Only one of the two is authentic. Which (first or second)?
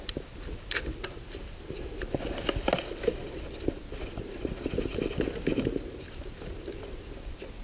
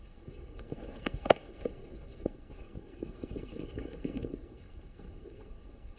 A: first